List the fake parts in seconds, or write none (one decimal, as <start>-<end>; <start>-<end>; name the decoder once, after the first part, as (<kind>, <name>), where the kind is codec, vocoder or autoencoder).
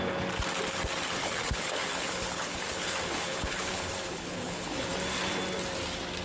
1.2-4.9 (codec, HILCodec)